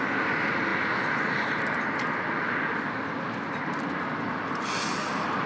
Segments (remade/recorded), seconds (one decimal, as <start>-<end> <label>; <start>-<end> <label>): 0.0-5.5 recorded